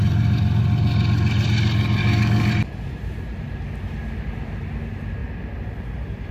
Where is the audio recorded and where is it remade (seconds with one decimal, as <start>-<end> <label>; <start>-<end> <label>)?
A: 0.0-2.0 recorded; 2.0-2.5 remade; 2.5-6.3 recorded